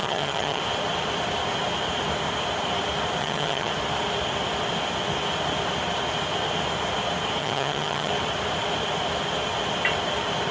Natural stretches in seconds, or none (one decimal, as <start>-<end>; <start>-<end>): 0.6-3.2; 3.7-7.4; 8.1-10.5